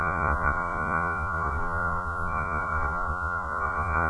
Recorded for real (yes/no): no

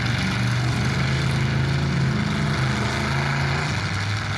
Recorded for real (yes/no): yes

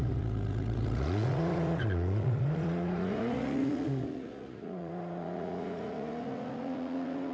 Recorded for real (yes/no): no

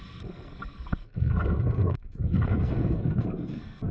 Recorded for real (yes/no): no